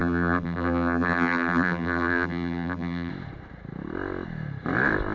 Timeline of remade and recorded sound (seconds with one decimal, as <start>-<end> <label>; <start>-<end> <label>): 0.0-3.1 remade; 3.1-5.1 recorded